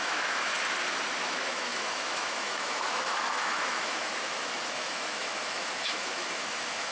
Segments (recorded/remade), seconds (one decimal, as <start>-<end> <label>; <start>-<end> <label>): 0.0-0.5 remade; 0.5-1.2 recorded; 1.2-6.9 remade